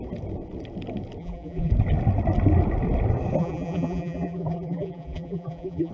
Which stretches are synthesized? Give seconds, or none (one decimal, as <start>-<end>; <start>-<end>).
1.2-1.7; 3.4-5.9